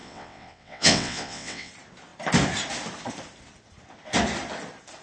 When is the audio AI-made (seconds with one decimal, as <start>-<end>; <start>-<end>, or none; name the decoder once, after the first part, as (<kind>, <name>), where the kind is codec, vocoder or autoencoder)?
0.0-1.7 (vocoder, WaveNeXt)